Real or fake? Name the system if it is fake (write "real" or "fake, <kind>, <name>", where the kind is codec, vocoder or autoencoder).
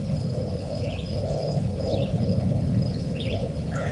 fake, codec, HILCodec